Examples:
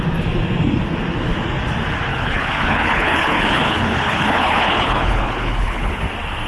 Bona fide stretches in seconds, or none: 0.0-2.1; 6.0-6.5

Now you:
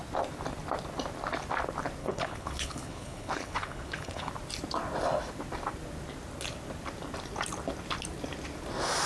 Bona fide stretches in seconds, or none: 0.0-2.0; 4.3-9.1

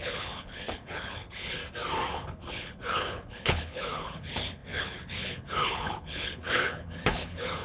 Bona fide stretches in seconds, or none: 1.6-2.1

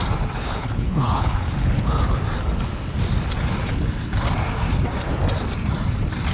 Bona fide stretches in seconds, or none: 0.0-0.4; 2.0-6.3

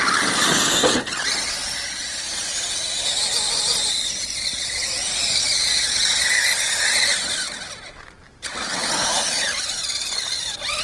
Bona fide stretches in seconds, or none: 0.0-10.8